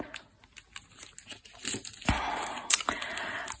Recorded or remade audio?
recorded